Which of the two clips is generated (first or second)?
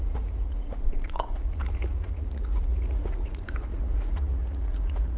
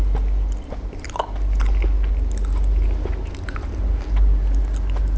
first